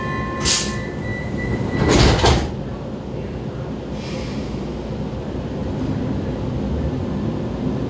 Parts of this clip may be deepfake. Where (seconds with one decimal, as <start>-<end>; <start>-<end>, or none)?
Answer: none